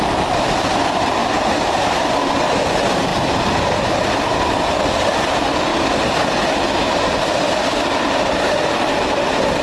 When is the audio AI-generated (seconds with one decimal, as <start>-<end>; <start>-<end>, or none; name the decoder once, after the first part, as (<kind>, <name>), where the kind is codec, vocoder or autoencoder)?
none